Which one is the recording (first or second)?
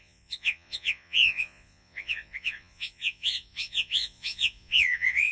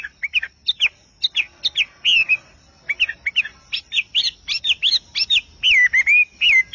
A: second